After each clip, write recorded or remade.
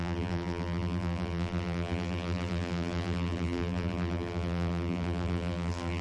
remade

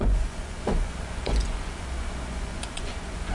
remade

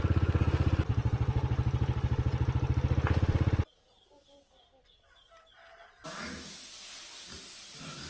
recorded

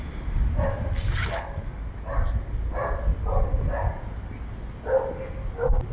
recorded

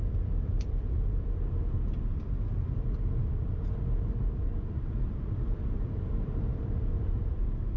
remade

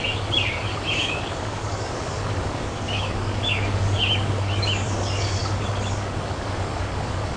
remade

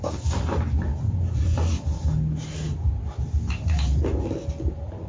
recorded